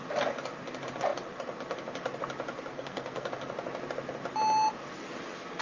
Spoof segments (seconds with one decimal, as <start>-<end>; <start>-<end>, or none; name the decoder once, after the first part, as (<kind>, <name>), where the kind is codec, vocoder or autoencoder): 2.7-3.3 (codec, SNAC)

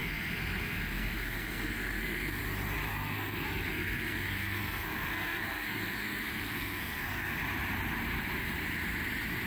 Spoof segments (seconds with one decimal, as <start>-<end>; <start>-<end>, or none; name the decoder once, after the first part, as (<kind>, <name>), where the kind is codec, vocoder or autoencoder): 0.0-2.4 (codec, SNAC); 2.9-7.4

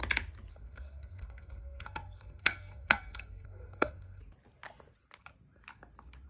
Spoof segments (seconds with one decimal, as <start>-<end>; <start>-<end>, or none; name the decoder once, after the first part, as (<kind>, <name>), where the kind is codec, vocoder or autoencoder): 0.5-4.2 (codec, SNAC)

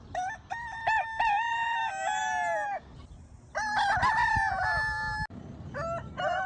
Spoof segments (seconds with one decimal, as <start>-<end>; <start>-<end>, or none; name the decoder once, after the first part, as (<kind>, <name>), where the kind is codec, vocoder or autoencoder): none

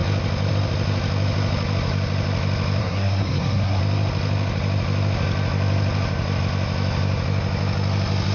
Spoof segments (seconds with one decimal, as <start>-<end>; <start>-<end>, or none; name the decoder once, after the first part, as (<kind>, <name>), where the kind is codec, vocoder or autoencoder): 2.8-3.8 (codec, SNAC)

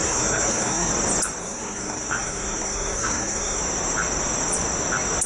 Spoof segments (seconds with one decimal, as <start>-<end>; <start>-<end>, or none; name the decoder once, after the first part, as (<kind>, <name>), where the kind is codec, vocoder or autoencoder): 0.0-0.9 (codec, SNAC); 1.4-3.6

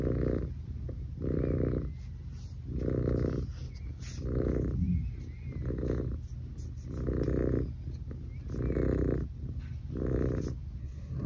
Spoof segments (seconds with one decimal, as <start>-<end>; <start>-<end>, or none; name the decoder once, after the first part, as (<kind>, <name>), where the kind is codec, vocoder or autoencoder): 10.8-11.3 (codec, SNAC)

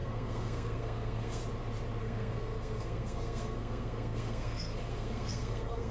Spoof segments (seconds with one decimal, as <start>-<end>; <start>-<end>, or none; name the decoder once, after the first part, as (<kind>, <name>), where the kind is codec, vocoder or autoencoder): 0.0-1.4 (codec, SNAC); 2.0-5.9